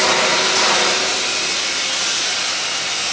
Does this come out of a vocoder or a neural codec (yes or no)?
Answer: no